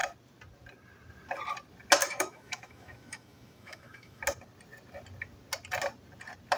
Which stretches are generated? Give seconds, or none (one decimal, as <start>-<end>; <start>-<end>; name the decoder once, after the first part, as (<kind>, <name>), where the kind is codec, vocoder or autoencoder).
2.0-4.2 (autoencoder, DAC-VAE)